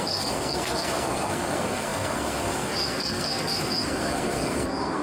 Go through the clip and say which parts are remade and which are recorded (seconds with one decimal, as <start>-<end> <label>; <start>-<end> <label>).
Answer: 0.0-5.0 remade